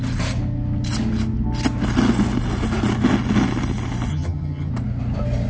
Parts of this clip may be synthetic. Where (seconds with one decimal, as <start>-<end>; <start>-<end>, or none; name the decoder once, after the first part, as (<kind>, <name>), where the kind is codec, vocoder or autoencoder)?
4.1-4.7 (vocoder, HiFi-GAN)